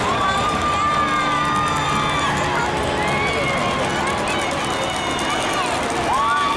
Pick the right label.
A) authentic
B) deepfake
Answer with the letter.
A